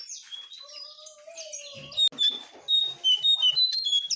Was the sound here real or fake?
real